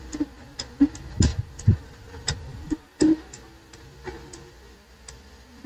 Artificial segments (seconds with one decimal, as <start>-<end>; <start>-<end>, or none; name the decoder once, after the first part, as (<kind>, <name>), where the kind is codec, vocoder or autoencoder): 1.3-1.9 (vocoder, BigVGAN v2); 2.5-3.1